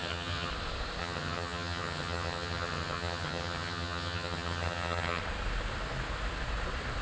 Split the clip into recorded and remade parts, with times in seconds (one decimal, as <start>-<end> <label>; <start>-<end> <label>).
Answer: 0.0-0.5 remade; 0.5-1.0 recorded; 1.0-5.2 remade; 5.2-7.0 recorded